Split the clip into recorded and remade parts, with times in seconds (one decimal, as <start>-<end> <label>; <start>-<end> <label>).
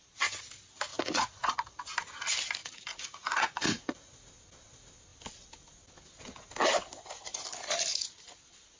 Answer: 0.0-0.9 recorded; 0.9-1.8 remade; 1.8-2.6 recorded; 2.6-4.1 remade; 4.1-8.8 recorded